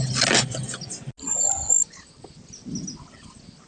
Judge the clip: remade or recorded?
recorded